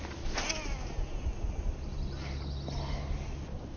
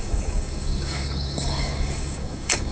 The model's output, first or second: second